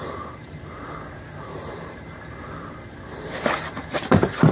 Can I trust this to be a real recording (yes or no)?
no